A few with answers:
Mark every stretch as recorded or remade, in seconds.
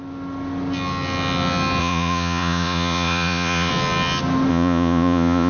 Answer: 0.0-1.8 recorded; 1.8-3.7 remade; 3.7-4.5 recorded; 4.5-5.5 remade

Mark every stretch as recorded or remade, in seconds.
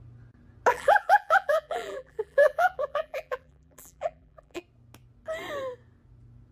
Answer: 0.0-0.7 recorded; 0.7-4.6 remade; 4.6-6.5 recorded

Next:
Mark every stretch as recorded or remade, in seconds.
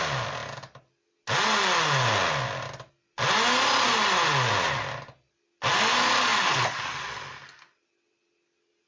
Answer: 0.0-8.9 recorded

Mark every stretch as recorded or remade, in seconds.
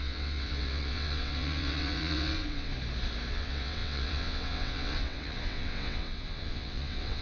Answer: 0.0-2.7 remade; 2.7-3.3 recorded; 3.3-7.2 remade